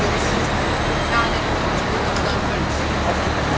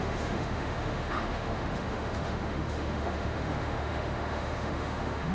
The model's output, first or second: second